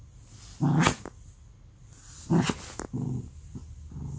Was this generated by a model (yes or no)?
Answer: no